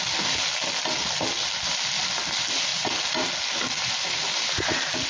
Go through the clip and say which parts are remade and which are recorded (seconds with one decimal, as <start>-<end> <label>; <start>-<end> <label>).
0.0-5.1 recorded